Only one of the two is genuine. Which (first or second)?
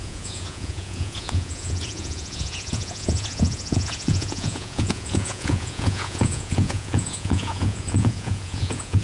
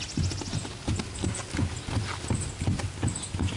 second